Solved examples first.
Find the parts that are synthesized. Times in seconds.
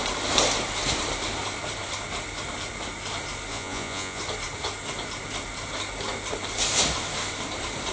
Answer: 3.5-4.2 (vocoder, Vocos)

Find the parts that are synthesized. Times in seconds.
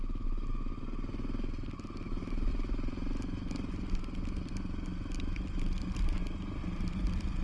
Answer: none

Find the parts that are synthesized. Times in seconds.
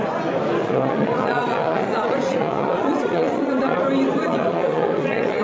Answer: 0.6-3.8 (vocoder, Vocos); 4.2-5.4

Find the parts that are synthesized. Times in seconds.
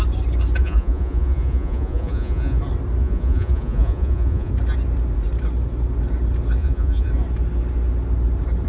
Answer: 0.6-2.6 (vocoder, Vocos); 3.0-4.5; 6.6-7.1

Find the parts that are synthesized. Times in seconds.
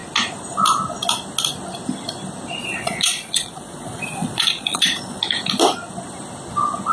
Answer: 2.6-5.2 (vocoder, Vocos)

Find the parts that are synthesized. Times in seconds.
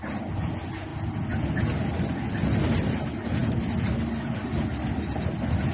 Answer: none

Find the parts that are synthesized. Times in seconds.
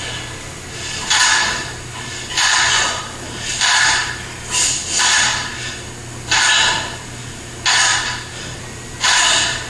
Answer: 2.3-3.0 (vocoder, Vocos)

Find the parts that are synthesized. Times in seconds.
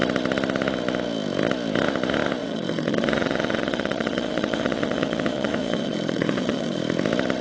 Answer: 2.4-6.8 (vocoder, Vocos)